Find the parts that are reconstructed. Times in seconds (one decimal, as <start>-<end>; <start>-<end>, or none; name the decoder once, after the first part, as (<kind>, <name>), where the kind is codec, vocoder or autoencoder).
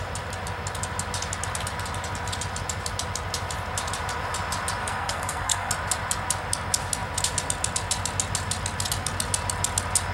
4.8-5.7 (codec, SNAC)